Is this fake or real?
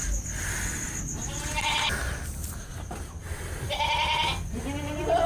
real